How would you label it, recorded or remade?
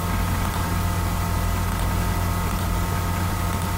recorded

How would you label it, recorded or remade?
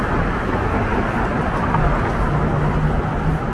recorded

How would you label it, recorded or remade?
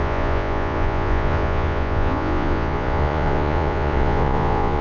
remade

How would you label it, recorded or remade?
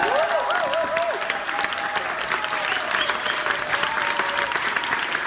recorded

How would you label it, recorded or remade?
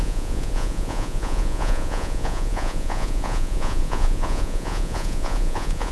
remade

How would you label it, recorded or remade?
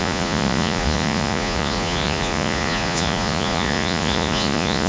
remade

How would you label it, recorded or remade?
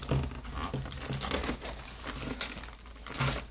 recorded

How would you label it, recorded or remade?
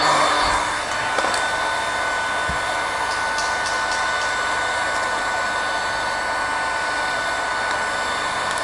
recorded